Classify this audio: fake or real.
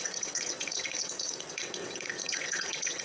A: fake